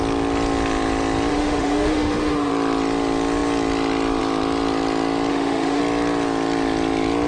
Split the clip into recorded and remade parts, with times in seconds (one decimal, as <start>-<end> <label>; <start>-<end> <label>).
0.0-1.3 recorded; 1.3-2.5 remade; 2.5-5.3 recorded; 5.3-5.8 remade; 5.8-7.3 recorded